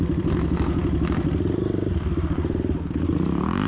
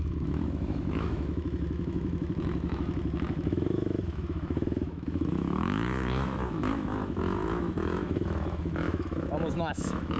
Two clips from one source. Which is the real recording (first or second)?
first